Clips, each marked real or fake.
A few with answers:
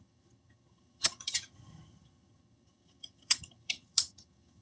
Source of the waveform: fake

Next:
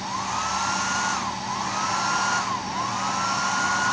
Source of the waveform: real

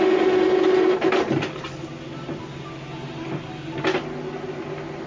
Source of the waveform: real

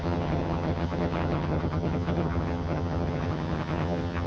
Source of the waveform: fake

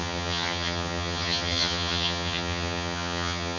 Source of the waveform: fake